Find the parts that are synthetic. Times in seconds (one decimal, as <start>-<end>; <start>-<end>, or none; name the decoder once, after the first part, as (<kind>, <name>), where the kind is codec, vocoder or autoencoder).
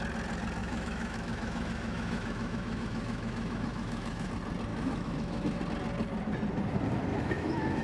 0.6-4.3 (autoencoder, DAC-VAE); 4.7-5.6; 7.1-7.8